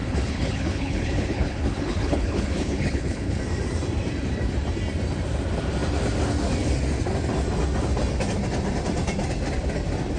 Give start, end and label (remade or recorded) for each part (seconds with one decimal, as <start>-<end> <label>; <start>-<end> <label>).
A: 0.0-3.4 remade; 3.4-10.2 recorded